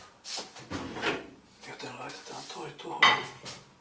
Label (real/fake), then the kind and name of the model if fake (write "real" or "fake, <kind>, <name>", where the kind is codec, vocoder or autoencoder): real